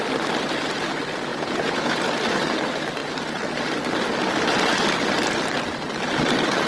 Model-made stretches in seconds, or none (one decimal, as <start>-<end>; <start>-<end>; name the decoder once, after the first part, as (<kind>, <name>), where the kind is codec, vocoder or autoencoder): 1.3-2.0 (vocoder, Vocos)